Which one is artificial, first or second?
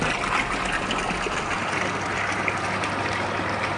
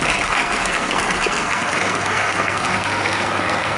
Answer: second